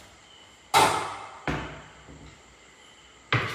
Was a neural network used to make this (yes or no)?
no